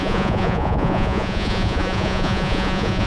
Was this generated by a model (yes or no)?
yes